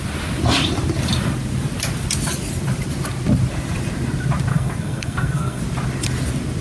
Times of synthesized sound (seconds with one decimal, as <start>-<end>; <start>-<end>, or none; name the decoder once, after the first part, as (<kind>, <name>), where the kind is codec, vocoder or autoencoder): 4.5-5.6 (codec, SNAC)